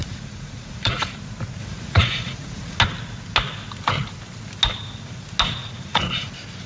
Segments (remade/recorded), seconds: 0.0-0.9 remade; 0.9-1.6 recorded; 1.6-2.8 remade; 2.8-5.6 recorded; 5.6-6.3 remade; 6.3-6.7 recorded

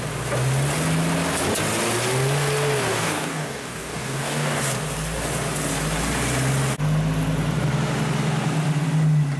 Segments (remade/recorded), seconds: 0.0-2.9 recorded; 2.9-4.6 remade; 4.6-9.4 recorded

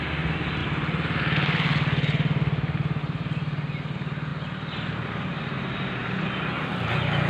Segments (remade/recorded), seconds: 0.0-7.3 recorded

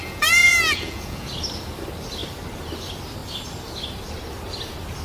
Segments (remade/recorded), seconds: 0.0-1.3 remade; 1.3-5.0 recorded

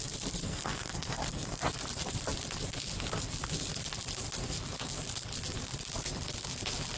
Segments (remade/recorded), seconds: 0.0-0.4 recorded; 0.4-1.6 remade; 1.6-7.0 recorded

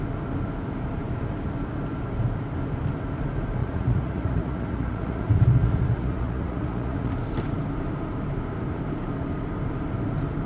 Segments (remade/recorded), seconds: 0.0-3.6 recorded; 3.6-7.1 remade; 7.1-10.5 recorded

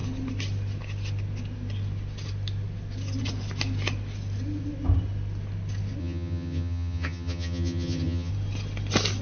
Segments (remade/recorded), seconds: 0.0-6.0 recorded; 6.0-8.3 remade; 8.3-9.2 recorded

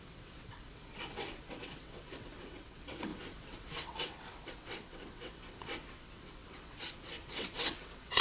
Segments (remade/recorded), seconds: 0.0-8.2 remade